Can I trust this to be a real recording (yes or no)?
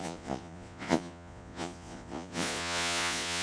no